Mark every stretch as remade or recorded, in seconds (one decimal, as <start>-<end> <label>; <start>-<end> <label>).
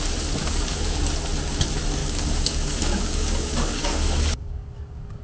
0.0-0.4 recorded; 0.4-1.0 remade; 1.0-2.0 recorded; 2.0-5.2 remade